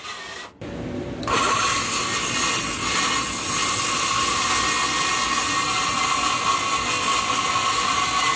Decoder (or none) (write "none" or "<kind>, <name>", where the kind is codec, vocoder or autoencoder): none